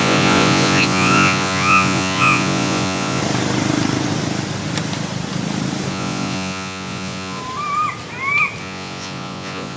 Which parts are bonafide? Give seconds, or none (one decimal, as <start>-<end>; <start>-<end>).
3.2-5.9; 7.4-8.6